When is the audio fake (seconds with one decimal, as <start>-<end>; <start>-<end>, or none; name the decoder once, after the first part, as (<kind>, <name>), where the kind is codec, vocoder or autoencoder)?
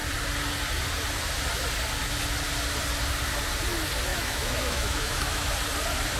4.1-5.5 (autoencoder, DAC-VAE)